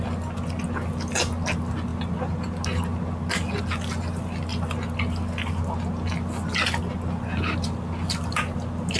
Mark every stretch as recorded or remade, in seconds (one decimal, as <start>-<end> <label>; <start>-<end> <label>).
0.0-9.0 recorded